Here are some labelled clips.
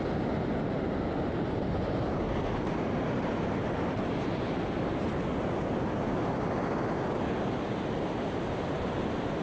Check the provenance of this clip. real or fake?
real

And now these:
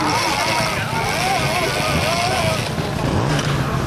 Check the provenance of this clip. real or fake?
real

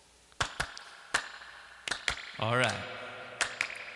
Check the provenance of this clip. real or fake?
real